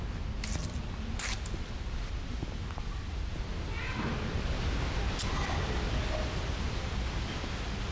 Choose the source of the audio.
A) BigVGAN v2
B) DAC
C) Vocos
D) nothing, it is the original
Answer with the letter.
D